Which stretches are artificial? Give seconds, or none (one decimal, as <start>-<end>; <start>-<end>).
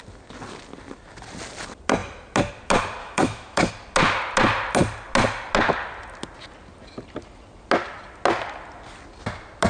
3.0-3.7